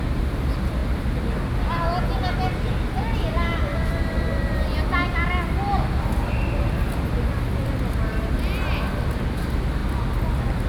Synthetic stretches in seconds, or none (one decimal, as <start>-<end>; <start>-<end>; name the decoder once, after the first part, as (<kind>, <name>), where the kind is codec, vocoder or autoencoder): none